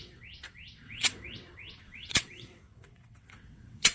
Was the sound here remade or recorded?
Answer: remade